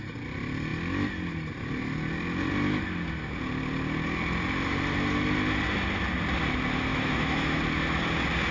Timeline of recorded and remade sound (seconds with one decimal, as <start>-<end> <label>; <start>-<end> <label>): 0.0-6.9 recorded; 6.9-7.6 remade; 7.6-8.5 recorded